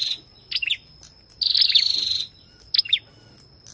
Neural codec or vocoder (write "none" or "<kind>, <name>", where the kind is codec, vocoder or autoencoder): none